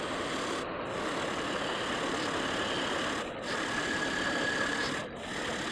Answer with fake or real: real